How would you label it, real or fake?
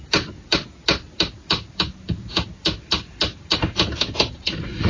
real